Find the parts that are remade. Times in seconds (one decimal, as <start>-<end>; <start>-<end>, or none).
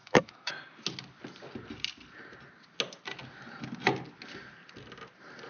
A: 0.0-0.5